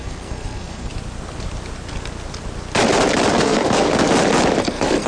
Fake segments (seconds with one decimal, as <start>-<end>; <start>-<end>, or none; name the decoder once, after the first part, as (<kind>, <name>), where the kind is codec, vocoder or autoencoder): 0.0-0.9 (codec, SNAC); 3.3-3.9; 4.6-5.1